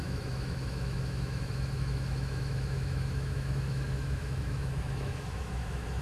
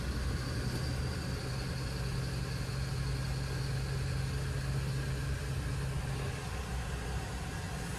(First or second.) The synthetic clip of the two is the first